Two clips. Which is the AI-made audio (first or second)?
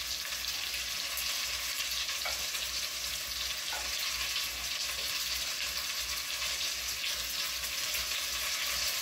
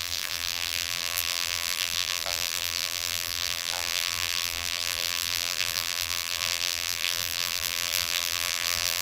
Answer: second